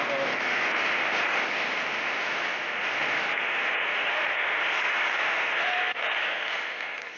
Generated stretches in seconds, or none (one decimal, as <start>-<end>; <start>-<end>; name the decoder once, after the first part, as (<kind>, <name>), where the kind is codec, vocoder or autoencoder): none